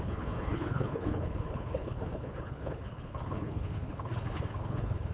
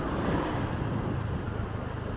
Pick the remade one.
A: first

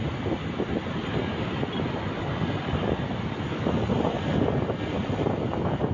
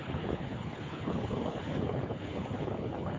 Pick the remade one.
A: second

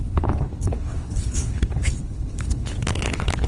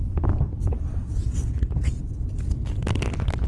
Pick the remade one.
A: first